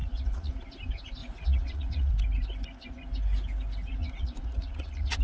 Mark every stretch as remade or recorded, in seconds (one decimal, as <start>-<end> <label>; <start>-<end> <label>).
0.0-0.5 remade; 0.5-1.2 recorded; 1.2-2.1 remade; 2.1-4.0 recorded; 4.0-5.2 remade

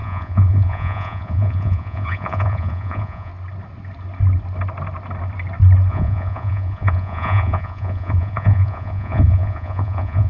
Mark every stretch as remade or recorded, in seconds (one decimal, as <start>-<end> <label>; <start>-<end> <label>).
0.0-3.3 remade; 3.3-5.9 recorded; 5.9-10.3 remade

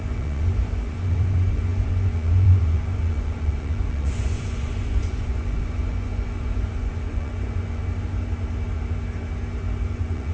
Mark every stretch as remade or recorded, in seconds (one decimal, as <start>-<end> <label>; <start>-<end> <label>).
0.0-7.8 remade; 7.8-9.9 recorded; 9.9-10.3 remade

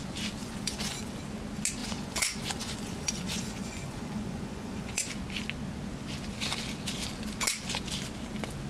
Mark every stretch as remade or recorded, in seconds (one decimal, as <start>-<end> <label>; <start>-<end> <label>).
0.0-0.4 recorded; 0.4-1.1 remade; 1.1-1.8 recorded; 1.8-5.1 remade; 5.1-8.7 recorded

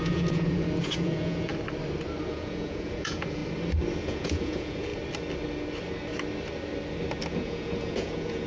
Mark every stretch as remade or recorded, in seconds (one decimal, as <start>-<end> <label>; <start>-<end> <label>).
0.0-1.5 remade; 1.5-2.2 recorded; 2.2-3.4 remade; 3.4-4.0 recorded; 4.0-4.9 remade; 4.9-7.3 recorded; 7.3-8.5 remade

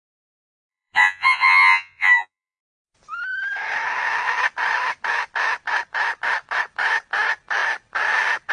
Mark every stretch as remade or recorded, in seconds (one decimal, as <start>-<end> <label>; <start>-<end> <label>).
0.0-0.7 recorded; 0.7-2.6 remade; 2.6-8.5 recorded

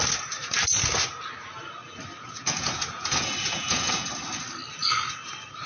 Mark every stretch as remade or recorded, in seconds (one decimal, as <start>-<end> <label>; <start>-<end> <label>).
0.0-2.2 recorded; 2.2-4.1 remade; 4.1-5.7 recorded

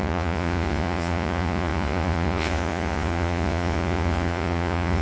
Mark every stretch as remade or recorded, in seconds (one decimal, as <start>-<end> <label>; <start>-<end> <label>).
0.0-5.0 remade